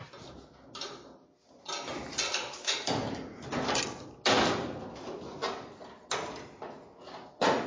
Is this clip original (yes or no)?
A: yes